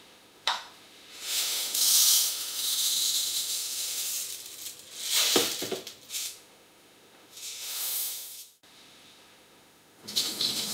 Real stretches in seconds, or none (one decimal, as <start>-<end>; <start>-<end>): 4.1-6.1